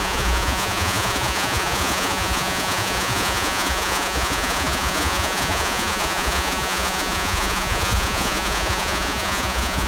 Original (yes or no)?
no